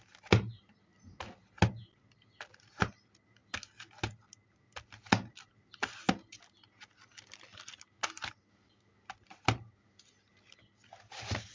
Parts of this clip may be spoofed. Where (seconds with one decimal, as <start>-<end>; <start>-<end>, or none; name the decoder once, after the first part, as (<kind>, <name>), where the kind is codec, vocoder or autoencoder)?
none